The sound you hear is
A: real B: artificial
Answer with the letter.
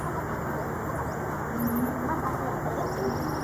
A